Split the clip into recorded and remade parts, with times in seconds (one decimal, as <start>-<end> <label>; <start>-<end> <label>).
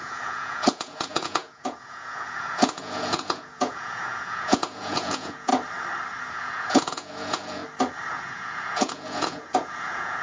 0.0-5.5 remade; 5.5-6.3 recorded; 6.3-7.6 remade; 7.6-8.1 recorded; 8.1-10.2 remade